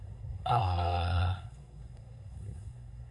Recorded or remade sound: remade